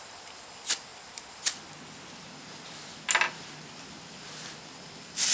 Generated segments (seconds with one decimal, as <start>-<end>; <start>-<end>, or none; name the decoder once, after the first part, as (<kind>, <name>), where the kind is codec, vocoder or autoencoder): none